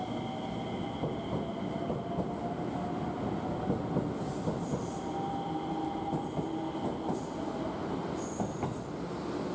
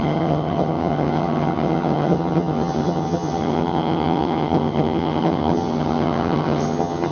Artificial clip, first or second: second